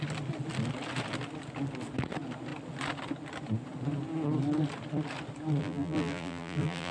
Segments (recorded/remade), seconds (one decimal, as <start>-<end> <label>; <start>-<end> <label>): 0.0-5.6 recorded; 5.6-6.9 remade